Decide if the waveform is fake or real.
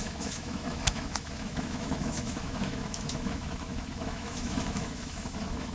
fake